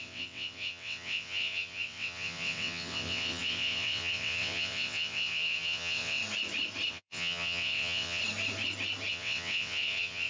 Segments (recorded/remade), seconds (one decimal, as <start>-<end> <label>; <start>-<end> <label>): 0.0-6.2 remade; 6.2-6.9 recorded; 6.9-8.2 remade; 8.2-9.1 recorded; 9.1-10.3 remade